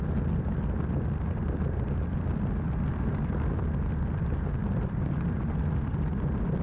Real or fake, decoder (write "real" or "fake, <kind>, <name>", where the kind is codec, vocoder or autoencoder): fake, vocoder, BigVGAN v2